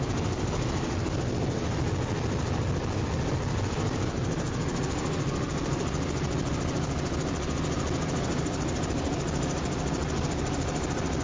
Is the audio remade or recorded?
recorded